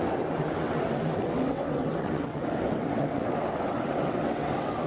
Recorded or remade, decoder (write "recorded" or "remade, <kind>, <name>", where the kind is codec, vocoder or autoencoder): remade, vocoder, WaveNeXt